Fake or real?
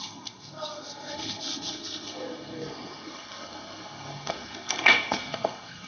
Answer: fake